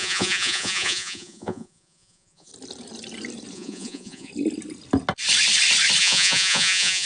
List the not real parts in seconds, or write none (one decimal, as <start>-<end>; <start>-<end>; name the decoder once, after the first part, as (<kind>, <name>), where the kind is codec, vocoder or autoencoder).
0.0-2.5 (vocoder, Vocos); 3.5-4.3; 6.0-7.1